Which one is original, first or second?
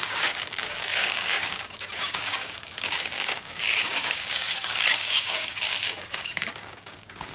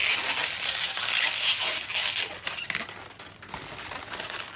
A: second